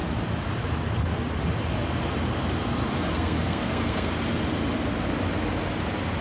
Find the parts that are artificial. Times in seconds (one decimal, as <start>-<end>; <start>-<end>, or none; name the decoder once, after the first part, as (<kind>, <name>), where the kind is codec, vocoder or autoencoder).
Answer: 3.1-4.1 (codec, SNAC)